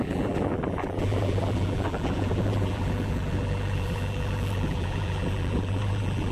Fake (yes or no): yes